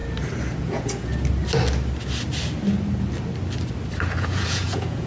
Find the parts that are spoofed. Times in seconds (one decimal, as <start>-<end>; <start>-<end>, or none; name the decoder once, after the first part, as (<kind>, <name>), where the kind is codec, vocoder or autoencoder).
0.6-1.1 (vocoder, Vocos); 4.2-5.1